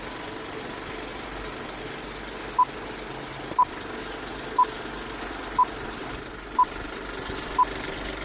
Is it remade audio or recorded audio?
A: recorded